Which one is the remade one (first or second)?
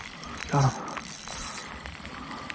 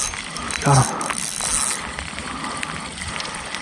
first